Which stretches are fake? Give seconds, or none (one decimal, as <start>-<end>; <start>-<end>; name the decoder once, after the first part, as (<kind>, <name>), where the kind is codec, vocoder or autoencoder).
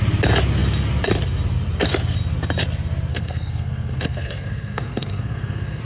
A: 3.1-5.8 (codec, SNAC)